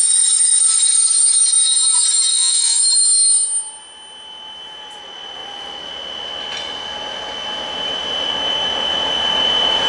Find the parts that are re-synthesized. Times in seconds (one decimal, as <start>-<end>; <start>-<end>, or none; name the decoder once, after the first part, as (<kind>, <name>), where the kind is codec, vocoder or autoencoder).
2.3-2.8 (vocoder, Vocos)

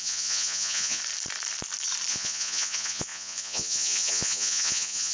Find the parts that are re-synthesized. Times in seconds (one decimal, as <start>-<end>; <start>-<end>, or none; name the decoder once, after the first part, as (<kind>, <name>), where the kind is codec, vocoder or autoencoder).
0.0-1.0 (vocoder, Vocos); 2.1-5.1

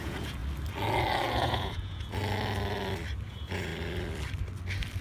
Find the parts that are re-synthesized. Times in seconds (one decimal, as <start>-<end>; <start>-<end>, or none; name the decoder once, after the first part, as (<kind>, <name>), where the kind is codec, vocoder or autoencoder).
0.0-0.4 (vocoder, Vocos); 1.3-2.2; 3.3-3.7

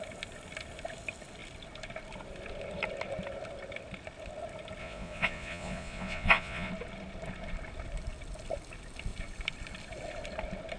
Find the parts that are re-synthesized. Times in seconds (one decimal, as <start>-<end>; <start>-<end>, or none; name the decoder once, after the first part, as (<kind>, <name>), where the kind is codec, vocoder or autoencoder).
4.8-6.7 (vocoder, Vocos)

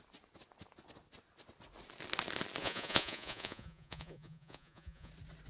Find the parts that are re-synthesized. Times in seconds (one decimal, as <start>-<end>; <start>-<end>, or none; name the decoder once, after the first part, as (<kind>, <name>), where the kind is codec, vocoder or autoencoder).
2.6-5.1 (vocoder, Vocos)

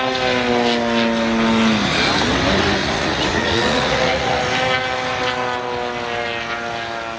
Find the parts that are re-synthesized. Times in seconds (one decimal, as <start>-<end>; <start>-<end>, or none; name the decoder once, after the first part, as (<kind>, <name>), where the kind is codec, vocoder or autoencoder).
2.8-4.4 (vocoder, Vocos)